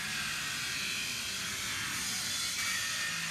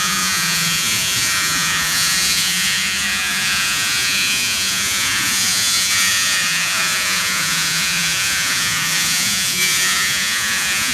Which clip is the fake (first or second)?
second